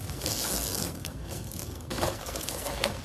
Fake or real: fake